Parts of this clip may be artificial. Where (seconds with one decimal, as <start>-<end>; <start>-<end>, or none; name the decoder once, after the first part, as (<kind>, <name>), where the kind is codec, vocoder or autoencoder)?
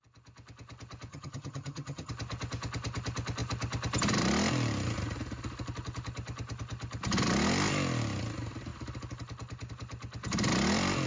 1.1-2.1 (vocoder, HiFi-GAN)